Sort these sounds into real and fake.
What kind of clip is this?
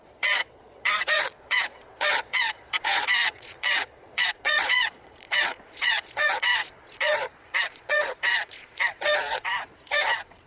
fake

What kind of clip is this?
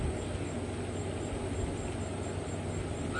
real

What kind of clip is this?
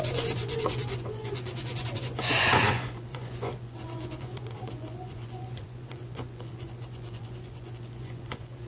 fake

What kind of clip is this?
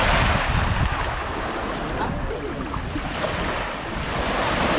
real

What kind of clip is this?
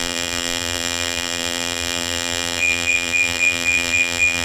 fake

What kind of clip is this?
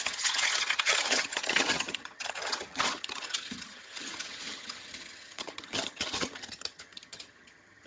fake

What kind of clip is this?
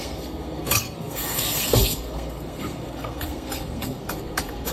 fake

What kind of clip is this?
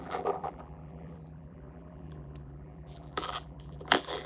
fake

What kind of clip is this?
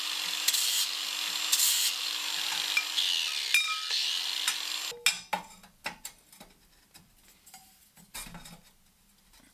real